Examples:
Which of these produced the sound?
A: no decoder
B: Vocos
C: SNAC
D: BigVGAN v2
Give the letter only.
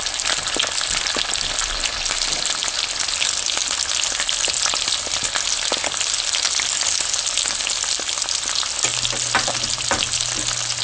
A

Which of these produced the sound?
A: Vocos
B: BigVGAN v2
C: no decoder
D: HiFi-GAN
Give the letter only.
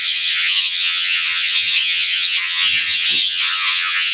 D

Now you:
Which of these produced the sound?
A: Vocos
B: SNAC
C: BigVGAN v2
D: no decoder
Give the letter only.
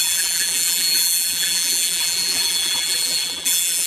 C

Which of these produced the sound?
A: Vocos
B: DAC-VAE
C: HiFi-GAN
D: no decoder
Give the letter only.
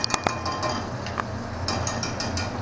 D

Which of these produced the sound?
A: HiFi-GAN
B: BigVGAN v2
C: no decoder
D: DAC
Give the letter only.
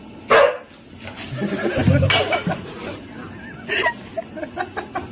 C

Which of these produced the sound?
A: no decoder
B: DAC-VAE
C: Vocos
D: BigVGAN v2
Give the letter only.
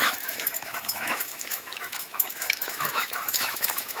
B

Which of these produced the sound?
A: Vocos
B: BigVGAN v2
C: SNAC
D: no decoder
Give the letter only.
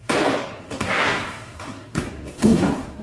C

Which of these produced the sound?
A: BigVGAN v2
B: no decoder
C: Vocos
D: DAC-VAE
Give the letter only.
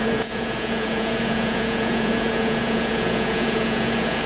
C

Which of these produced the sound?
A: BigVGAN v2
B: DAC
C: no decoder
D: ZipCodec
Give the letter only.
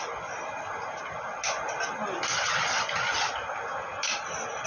C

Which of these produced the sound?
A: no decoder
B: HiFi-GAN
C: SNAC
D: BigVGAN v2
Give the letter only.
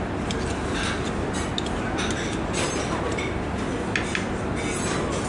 A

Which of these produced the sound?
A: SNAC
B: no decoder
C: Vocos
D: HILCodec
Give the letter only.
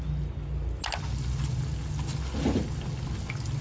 B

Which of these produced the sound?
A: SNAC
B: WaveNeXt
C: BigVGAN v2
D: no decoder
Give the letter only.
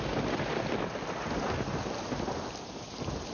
D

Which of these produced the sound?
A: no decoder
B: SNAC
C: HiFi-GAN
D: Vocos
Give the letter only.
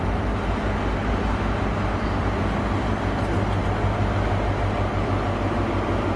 A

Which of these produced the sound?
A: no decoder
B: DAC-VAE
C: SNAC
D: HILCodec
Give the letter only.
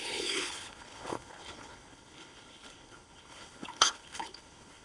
D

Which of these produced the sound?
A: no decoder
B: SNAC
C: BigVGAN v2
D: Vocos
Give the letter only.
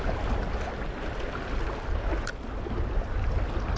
A